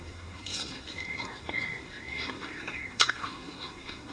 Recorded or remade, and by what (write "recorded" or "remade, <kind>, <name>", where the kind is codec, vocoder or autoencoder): remade, codec, SNAC